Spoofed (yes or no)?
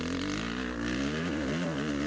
no